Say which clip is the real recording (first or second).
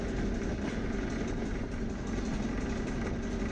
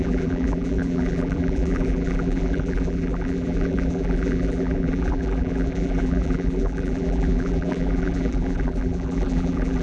first